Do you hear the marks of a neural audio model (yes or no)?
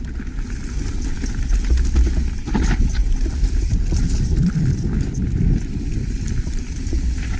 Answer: no